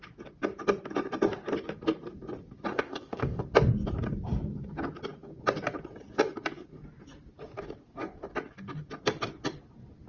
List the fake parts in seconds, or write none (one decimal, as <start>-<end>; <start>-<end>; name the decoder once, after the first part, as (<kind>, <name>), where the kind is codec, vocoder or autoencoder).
2.7-3.4 (codec, ZipCodec)